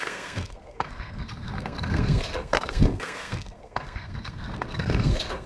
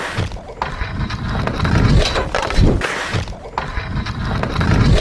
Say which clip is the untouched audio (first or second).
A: second